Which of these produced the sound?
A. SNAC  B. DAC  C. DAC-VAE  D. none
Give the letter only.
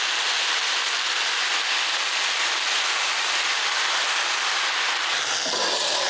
D